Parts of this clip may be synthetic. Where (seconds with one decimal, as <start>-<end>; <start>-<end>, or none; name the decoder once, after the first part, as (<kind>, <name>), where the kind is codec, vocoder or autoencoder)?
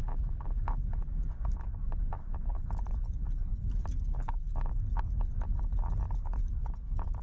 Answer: 0.0-1.3 (vocoder, BigVGAN v2); 4.1-4.7